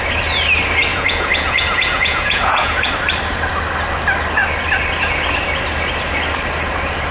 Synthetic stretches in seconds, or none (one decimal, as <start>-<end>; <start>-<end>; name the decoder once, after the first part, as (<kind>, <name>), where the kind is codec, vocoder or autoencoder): 0.9-2.9 (vocoder, Vocos)